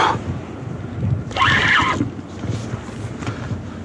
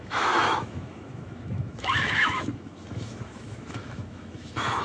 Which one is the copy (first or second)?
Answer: second